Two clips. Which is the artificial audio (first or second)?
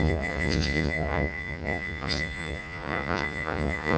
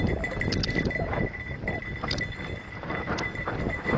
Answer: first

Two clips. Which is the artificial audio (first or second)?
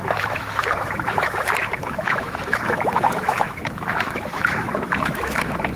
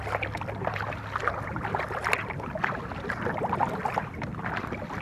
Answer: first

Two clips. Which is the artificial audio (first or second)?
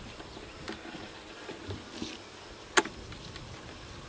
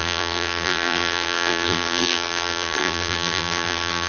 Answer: second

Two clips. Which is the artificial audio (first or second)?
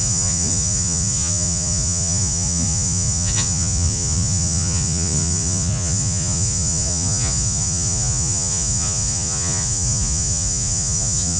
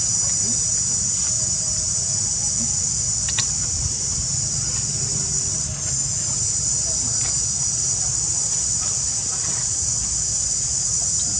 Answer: first